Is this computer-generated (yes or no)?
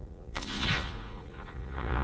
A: yes